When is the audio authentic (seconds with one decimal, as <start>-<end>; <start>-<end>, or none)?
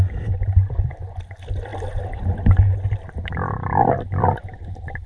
0.0-5.1